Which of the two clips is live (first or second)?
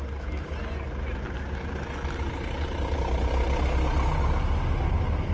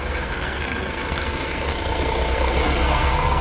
first